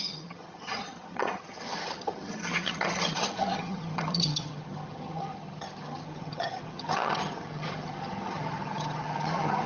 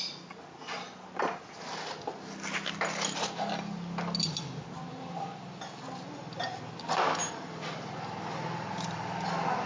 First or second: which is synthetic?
first